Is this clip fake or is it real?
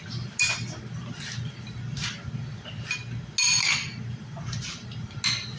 real